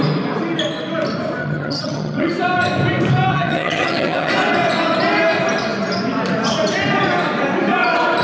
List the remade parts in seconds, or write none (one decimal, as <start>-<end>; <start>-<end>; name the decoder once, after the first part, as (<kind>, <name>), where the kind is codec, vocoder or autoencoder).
1.4-2.3 (vocoder, HiFi-GAN); 3.3-4.3